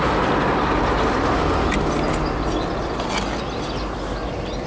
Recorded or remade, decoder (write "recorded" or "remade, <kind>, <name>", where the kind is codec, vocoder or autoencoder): recorded